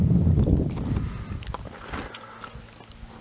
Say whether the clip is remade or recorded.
recorded